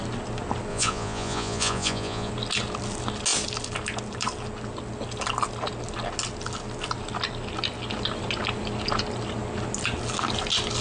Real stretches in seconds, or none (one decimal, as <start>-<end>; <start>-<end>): 0.0-0.7; 2.3-10.8